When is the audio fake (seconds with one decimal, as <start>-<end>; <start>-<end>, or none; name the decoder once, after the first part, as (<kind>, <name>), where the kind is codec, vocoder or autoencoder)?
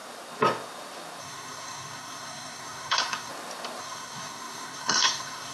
1.2-3.3 (codec, SNAC); 3.8-5.5